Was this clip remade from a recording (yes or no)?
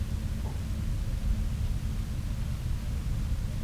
no